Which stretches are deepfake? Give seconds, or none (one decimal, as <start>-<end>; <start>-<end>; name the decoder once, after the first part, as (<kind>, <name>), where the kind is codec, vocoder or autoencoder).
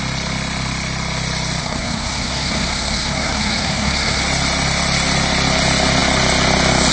1.6-4.2 (codec, SNAC)